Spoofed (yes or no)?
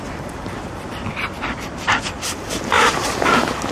yes